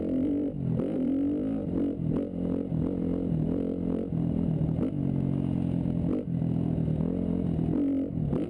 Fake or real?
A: real